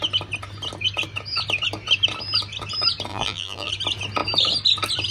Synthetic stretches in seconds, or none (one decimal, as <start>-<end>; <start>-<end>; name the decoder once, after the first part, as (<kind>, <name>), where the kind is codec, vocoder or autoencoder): 3.1-3.7 (vocoder, BigVGAN v2)